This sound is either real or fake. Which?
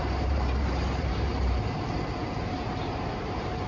fake